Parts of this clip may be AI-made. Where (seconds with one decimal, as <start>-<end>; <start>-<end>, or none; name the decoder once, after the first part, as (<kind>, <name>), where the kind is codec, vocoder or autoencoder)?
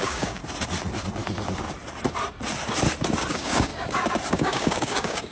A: 0.0-0.4 (codec, DAC); 3.3-3.7; 4.3-5.3